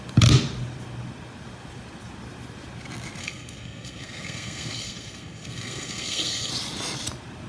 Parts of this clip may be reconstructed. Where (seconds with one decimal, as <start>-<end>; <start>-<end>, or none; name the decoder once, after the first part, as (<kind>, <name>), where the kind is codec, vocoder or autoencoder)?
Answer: 3.2-6.5 (codec, SNAC)